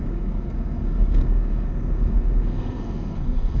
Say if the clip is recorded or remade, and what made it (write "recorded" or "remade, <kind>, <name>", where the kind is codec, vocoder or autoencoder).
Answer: remade, codec, SNAC